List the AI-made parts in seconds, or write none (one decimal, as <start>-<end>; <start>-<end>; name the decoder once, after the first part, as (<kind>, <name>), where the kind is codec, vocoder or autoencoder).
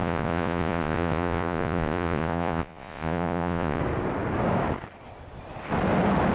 0.0-3.8 (vocoder, Vocos)